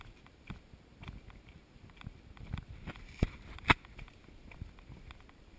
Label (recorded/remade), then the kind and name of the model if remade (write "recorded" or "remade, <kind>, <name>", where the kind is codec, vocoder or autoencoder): recorded